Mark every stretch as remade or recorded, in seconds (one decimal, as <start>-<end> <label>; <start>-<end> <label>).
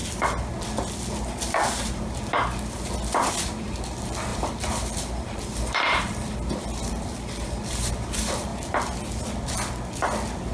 0.0-3.3 recorded; 3.3-8.5 remade; 8.5-10.5 recorded